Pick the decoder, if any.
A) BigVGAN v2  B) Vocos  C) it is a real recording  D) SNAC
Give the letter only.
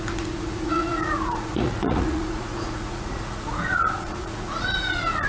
B